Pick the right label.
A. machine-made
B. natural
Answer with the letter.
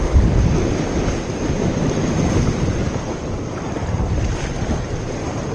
A